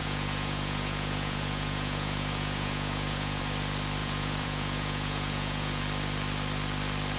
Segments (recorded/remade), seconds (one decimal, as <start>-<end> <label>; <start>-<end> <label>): 0.0-3.4 remade; 3.4-4.0 recorded; 4.0-5.8 remade; 5.8-7.2 recorded